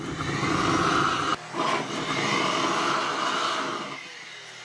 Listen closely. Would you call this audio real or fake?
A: real